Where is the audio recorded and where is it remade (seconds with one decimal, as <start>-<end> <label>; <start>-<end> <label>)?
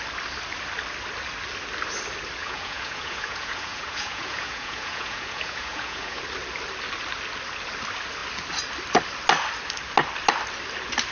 0.0-2.4 recorded; 2.4-6.2 remade; 6.2-11.1 recorded